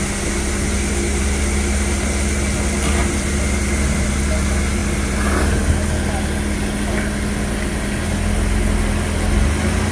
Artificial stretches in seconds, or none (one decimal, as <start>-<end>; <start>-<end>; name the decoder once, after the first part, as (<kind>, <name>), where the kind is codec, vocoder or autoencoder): none